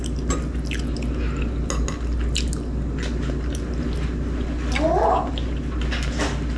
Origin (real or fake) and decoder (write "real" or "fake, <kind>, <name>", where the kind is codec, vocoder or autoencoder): real